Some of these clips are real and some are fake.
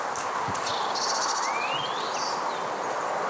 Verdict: real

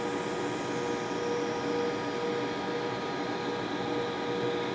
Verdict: real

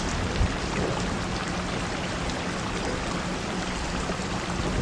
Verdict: real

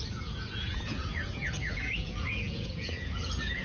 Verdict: fake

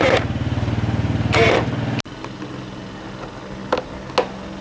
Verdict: real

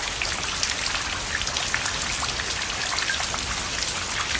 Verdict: real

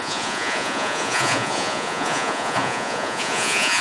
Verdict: fake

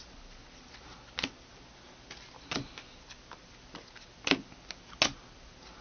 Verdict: real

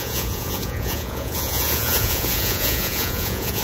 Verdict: fake